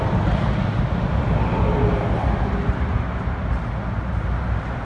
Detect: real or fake real